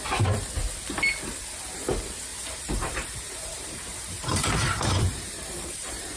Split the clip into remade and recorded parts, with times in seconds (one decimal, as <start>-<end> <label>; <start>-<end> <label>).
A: 0.0-2.3 recorded; 2.3-6.2 remade